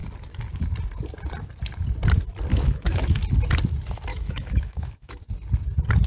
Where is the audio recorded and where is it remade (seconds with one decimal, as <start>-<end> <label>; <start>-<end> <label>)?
0.0-2.5 recorded; 2.5-3.2 remade; 3.2-4.1 recorded; 4.1-5.2 remade; 5.2-6.1 recorded